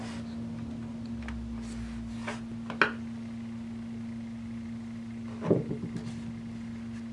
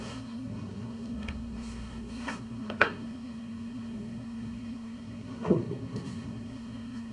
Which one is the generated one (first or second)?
second